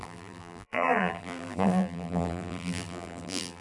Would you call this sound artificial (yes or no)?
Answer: yes